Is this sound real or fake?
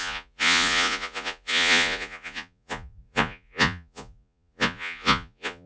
fake